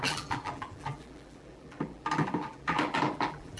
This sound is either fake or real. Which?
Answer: fake